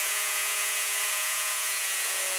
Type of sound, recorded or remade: remade